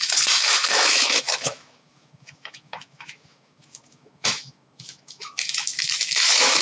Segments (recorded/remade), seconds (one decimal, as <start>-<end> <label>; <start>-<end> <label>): 0.0-6.6 remade